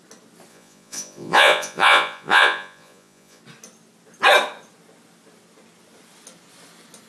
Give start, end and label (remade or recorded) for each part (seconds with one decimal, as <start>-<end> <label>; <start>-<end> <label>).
0.0-0.5 recorded; 0.5-3.4 remade; 3.4-7.1 recorded